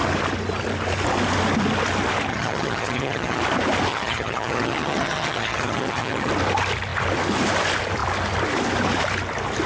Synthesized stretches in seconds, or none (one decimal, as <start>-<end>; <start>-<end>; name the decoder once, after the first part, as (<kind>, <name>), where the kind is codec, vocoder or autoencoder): 2.3-3.4 (vocoder, HiFi-GAN); 3.9-6.3